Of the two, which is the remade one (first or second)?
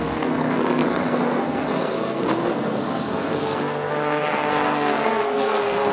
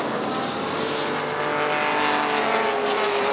first